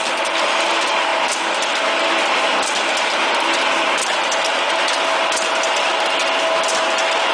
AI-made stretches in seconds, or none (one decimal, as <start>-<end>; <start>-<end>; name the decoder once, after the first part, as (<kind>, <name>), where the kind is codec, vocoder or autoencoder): none